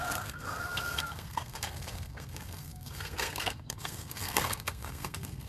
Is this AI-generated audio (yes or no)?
yes